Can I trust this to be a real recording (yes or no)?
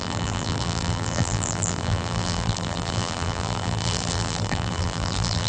no